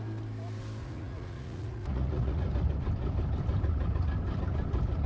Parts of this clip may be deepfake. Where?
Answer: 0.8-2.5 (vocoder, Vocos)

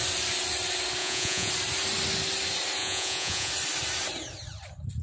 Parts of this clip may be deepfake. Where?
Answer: 1.0-1.5 (vocoder, Vocos); 2.8-3.5